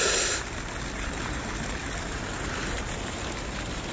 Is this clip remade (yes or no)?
no